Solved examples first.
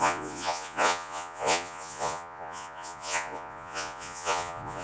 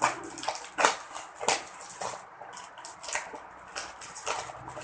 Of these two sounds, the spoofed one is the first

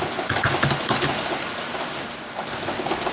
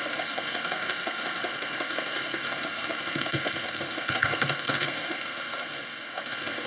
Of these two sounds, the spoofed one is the second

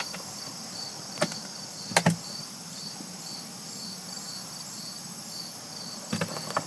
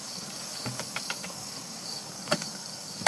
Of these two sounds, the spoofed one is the second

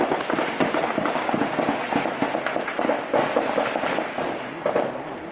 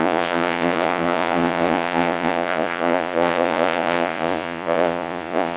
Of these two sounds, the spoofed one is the second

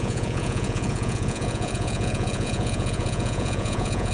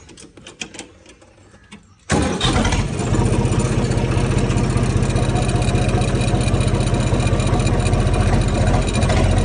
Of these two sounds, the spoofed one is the first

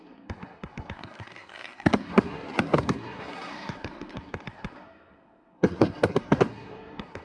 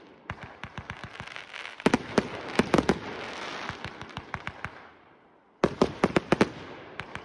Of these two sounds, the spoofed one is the first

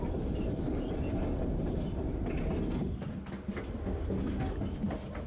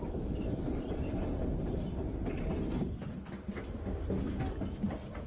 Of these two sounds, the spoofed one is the second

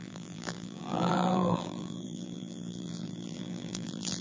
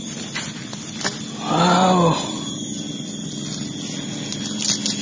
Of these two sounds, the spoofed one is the first